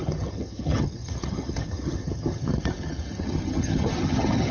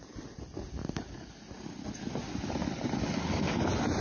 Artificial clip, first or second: first